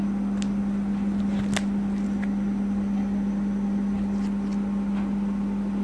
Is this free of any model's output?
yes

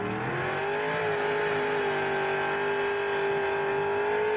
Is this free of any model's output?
yes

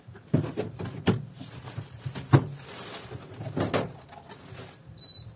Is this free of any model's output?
yes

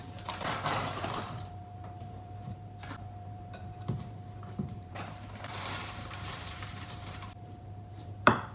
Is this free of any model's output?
no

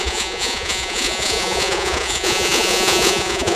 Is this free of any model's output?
no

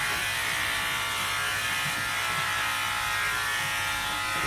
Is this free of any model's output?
yes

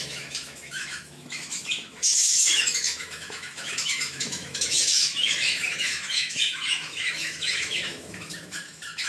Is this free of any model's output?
no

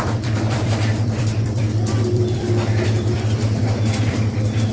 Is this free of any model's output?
no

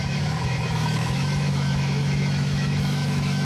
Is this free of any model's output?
no